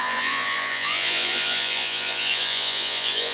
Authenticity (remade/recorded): remade